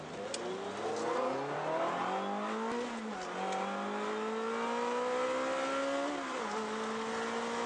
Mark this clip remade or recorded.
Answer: recorded